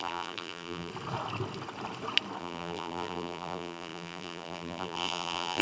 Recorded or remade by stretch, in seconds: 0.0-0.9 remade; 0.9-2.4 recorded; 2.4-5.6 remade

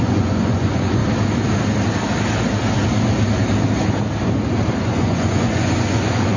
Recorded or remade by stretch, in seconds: 0.0-1.0 remade; 1.0-4.8 recorded; 4.8-6.4 remade

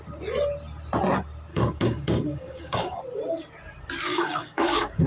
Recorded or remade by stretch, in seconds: 0.0-1.5 recorded; 1.5-3.0 remade; 3.0-4.1 recorded; 4.1-5.1 remade

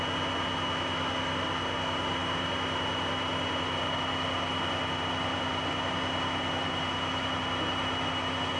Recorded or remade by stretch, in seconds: 0.0-8.6 recorded